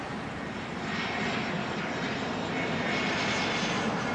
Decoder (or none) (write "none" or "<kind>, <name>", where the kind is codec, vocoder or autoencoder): none